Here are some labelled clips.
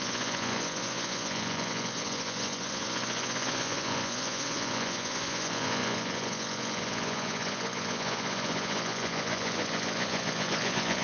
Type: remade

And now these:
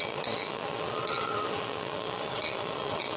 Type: remade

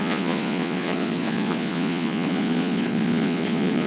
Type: remade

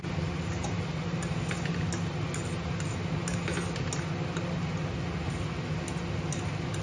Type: recorded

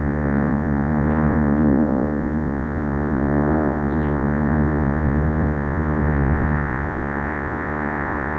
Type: remade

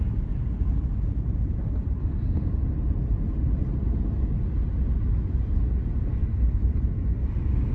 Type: recorded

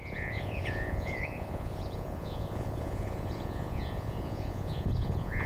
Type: remade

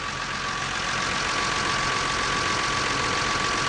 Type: recorded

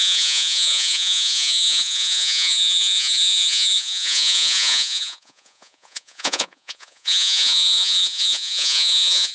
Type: remade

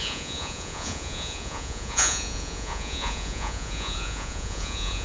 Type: remade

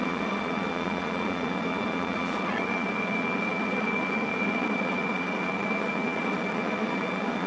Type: remade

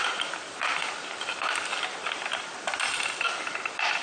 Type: recorded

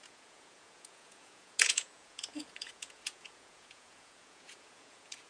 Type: remade